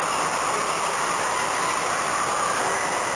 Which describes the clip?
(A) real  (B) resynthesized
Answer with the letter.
A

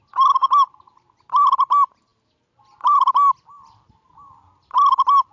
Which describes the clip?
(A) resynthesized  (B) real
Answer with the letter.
B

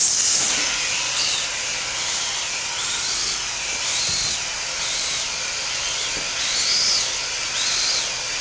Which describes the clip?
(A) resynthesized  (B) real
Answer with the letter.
B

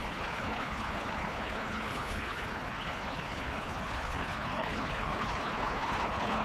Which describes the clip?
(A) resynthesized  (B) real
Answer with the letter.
A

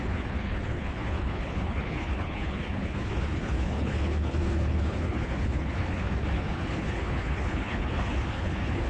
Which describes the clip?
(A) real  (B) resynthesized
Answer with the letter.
B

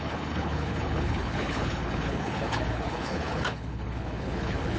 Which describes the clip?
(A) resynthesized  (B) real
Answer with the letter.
A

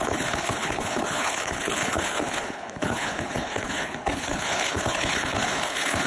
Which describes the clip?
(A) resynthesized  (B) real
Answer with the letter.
A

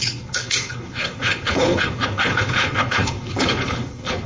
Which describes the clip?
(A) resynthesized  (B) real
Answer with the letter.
A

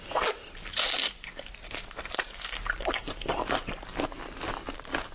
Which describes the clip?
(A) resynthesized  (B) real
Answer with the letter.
B